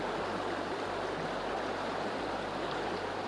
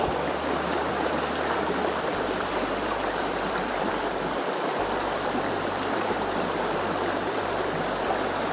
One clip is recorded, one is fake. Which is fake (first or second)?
second